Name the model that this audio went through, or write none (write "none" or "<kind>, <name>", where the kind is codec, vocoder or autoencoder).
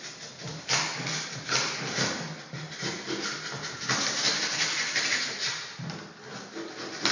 none